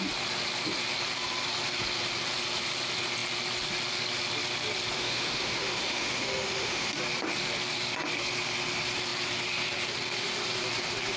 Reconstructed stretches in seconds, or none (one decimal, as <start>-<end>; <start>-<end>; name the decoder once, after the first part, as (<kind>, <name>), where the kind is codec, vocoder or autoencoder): 5.0-6.9 (autoencoder, DAC-VAE)